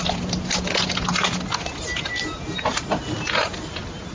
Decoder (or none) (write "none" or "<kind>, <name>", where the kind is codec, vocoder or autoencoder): none